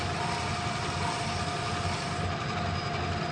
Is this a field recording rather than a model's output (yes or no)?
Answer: yes